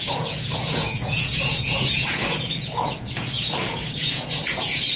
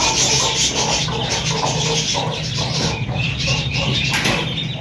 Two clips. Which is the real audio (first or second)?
second